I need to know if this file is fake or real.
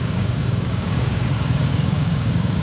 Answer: fake